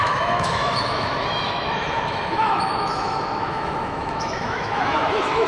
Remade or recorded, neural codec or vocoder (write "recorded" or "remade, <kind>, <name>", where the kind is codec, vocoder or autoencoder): remade, autoencoder, DAC-VAE